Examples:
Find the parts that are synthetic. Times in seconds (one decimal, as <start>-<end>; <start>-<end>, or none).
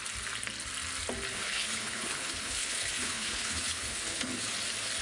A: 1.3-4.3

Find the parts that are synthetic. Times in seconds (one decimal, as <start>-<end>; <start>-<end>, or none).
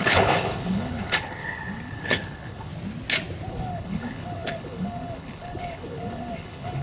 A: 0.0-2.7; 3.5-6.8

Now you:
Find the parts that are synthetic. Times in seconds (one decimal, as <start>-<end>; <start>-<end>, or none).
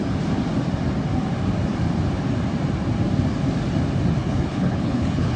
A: 4.2-5.4